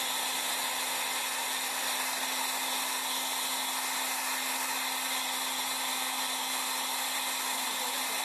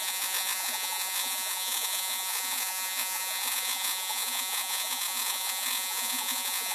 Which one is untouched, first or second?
first